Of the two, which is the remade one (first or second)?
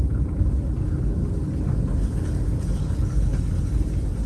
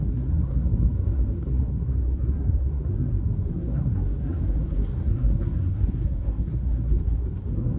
second